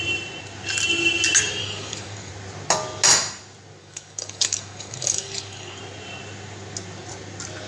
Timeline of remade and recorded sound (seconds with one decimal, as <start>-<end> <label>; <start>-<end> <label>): 0.0-1.6 recorded; 1.6-2.3 remade; 2.3-3.8 recorded; 3.8-5.8 remade; 5.8-7.7 recorded